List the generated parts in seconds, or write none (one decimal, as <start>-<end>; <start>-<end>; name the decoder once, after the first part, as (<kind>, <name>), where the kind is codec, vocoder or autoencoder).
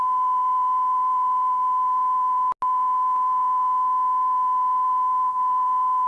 none